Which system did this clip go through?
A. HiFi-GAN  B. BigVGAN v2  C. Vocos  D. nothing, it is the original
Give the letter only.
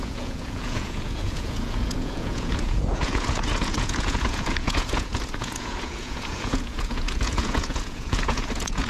C